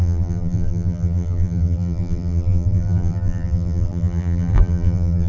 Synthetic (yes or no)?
yes